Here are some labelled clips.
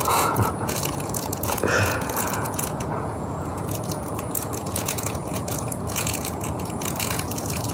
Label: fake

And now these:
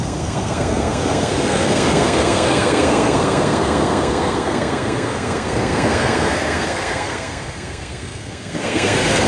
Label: fake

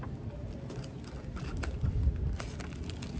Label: real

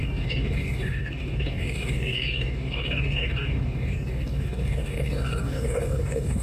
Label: fake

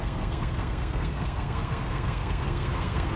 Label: fake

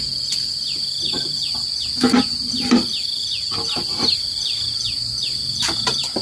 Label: real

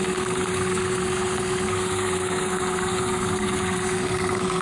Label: fake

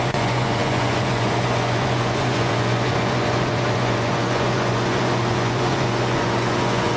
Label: fake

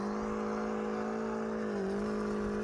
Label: real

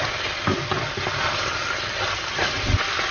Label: real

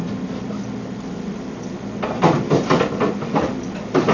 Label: real